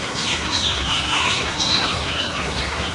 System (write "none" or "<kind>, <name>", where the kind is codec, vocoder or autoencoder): codec, SNAC